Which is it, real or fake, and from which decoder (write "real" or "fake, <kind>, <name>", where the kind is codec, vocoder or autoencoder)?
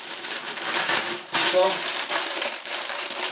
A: fake, vocoder, BigVGAN v2